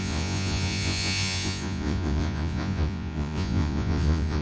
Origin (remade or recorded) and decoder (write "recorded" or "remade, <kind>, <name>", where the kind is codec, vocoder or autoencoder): remade, vocoder, Vocos